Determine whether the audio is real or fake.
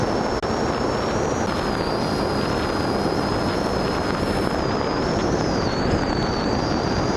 real